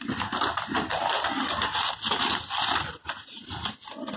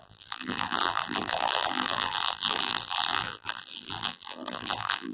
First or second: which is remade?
second